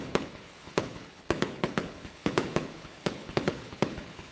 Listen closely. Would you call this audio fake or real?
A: fake